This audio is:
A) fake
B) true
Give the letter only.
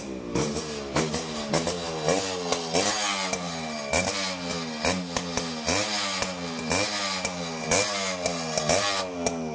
B